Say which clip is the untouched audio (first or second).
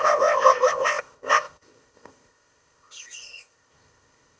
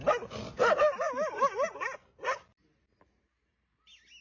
second